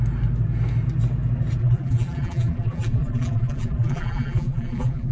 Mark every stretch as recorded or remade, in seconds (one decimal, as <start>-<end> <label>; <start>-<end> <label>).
0.0-1.6 recorded; 1.6-5.1 remade